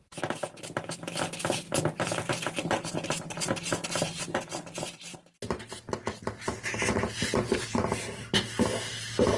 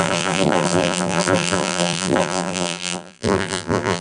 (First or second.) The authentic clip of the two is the first